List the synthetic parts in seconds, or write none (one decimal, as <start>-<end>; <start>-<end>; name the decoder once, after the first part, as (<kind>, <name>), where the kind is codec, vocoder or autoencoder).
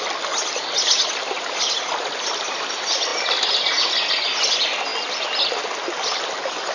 none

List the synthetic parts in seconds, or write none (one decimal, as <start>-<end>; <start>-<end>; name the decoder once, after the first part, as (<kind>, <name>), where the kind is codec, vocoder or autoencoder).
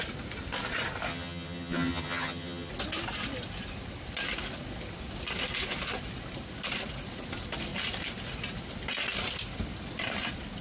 1.1-2.7 (vocoder, HiFi-GAN)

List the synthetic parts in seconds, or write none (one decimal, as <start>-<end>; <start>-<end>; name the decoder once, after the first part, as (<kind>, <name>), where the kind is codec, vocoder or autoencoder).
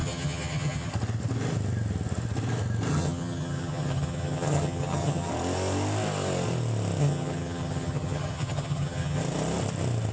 0.0-0.9 (vocoder, HiFi-GAN); 2.9-5.3; 7.0-9.2